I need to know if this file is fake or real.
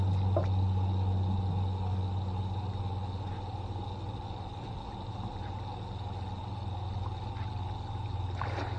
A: real